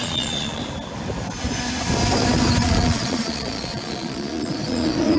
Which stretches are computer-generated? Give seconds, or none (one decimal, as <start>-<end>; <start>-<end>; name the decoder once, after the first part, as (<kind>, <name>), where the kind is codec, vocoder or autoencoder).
0.0-0.6 (vocoder, Vocos); 2.6-5.2